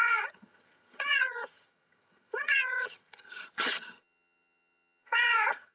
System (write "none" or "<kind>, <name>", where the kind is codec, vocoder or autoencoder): vocoder, HiFi-GAN